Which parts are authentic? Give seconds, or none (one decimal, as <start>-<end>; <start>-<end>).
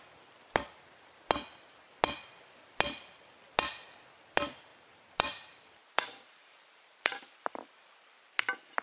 0.0-4.7; 7.1-8.8